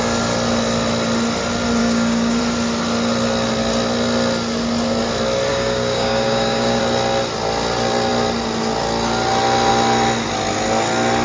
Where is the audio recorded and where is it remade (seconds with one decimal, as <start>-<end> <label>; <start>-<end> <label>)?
0.0-1.8 recorded; 1.8-2.4 remade; 2.4-5.5 recorded; 5.5-6.8 remade; 6.8-11.2 recorded